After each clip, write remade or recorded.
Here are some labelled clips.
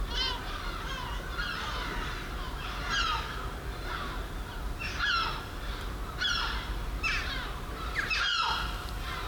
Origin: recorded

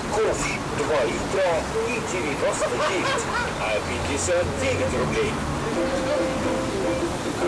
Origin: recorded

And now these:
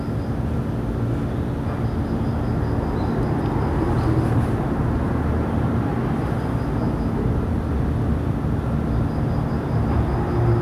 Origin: recorded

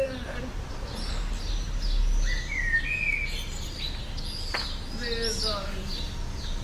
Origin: recorded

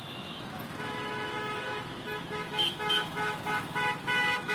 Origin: remade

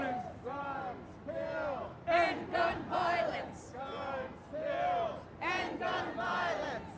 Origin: recorded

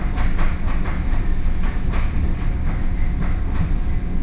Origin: recorded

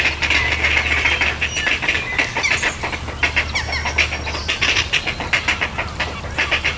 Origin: recorded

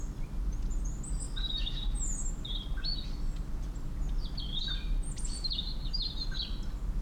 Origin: recorded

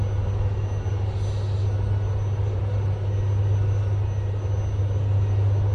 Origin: recorded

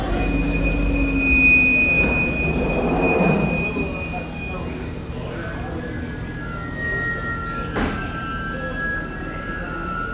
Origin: recorded